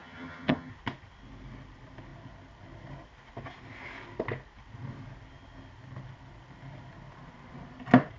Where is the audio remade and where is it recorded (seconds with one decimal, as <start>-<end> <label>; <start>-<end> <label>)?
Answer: 0.0-0.7 remade; 0.7-8.2 recorded